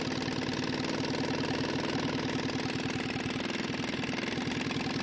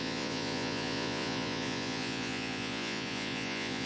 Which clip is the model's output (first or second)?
second